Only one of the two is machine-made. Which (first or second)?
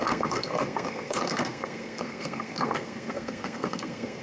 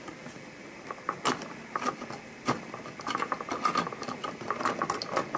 first